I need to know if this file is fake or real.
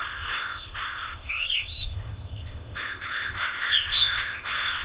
fake